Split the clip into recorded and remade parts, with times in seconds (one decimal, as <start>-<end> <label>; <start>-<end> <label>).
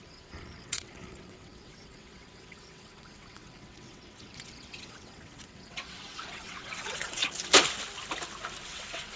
0.0-7.2 remade; 7.2-8.6 recorded; 8.6-9.2 remade